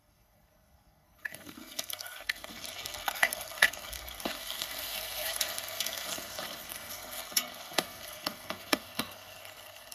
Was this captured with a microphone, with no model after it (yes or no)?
no